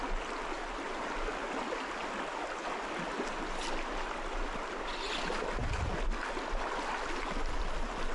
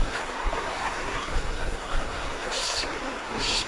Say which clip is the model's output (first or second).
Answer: second